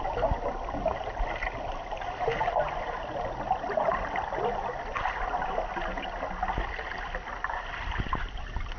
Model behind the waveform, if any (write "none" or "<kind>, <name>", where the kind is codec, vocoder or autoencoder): none